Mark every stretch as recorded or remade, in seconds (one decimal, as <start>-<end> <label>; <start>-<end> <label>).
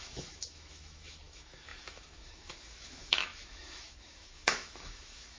0.0-5.4 remade